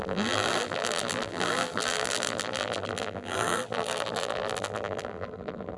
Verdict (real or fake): fake